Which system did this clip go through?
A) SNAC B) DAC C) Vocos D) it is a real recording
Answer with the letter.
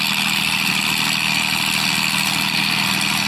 D